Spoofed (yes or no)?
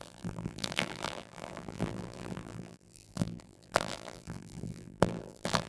yes